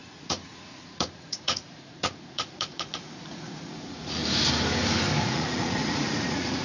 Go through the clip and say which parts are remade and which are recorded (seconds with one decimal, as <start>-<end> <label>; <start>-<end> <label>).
0.0-4.2 remade; 4.2-5.2 recorded; 5.2-6.6 remade